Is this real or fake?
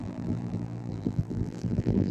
fake